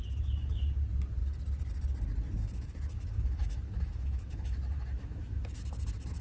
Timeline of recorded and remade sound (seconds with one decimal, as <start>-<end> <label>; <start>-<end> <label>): 0.0-2.4 recorded; 2.4-5.6 remade; 5.6-6.2 recorded